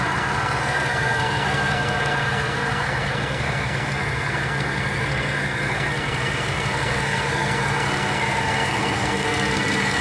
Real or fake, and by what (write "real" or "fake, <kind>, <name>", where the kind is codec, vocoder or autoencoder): fake, codec, SNAC